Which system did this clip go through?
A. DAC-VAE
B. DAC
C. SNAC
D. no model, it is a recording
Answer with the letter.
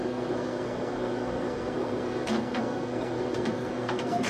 C